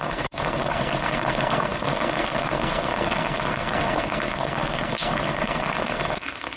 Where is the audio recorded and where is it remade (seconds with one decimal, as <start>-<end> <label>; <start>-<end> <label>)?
0.0-6.6 remade